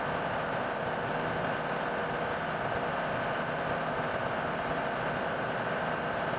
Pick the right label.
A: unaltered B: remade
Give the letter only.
A